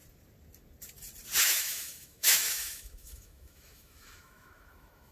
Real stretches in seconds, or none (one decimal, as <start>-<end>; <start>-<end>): 0.0-1.4